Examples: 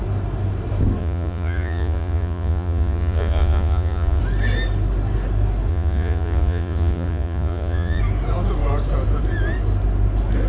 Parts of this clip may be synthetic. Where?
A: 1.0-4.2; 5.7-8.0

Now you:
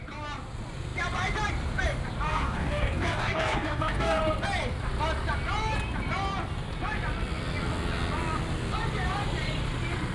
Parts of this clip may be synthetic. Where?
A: 2.3-4.2

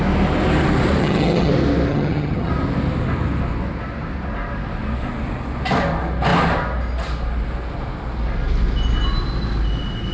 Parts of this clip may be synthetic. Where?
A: 1.0-1.5; 1.9-2.5